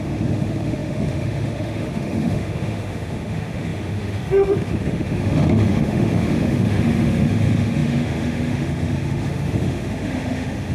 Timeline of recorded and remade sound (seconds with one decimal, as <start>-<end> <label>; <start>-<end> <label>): 0.0-10.7 remade